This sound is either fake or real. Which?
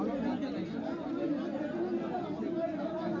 real